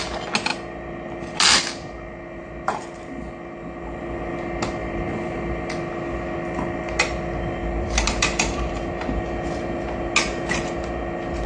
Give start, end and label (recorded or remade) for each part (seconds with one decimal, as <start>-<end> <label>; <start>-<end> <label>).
0.0-4.8 recorded; 4.8-5.9 remade; 5.9-7.6 recorded; 7.6-9.2 remade; 9.2-11.5 recorded